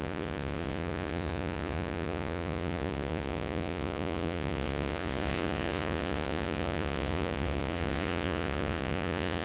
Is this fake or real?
fake